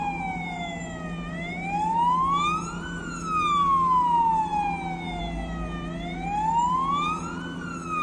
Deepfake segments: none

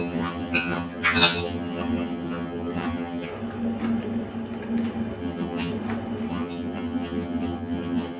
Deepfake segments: 0.0-3.3 (vocoder, HiFi-GAN); 5.2-5.7; 6.3-8.2

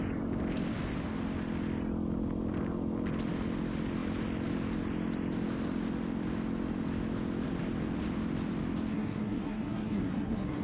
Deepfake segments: 8.9-10.6 (codec, SNAC)

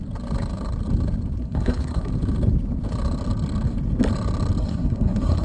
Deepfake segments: 1.4-2.1 (codec, SNAC); 4.6-5.4

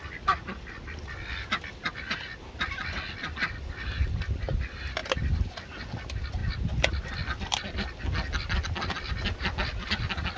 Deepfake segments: none

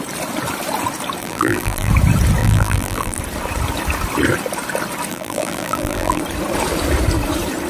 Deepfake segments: 1.2-1.9 (vocoder, BigVGAN v2); 2.4-3.2; 5.1-6.2